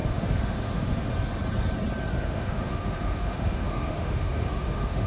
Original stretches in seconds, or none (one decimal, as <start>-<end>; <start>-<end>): 1.1-2.1

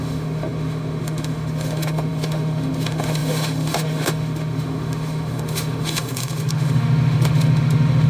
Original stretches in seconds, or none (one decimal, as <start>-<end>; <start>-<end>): none

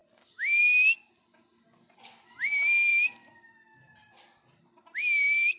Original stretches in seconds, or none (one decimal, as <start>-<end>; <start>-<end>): 0.0-5.6

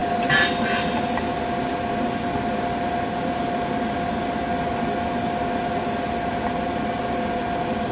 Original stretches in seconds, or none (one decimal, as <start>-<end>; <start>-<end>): 0.0-7.9

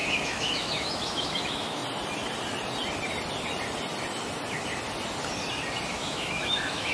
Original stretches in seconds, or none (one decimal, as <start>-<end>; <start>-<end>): 1.8-5.9